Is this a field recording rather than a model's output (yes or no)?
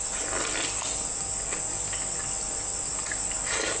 yes